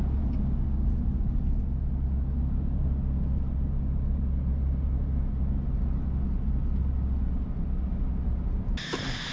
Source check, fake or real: real